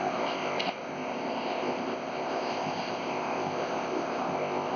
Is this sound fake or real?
fake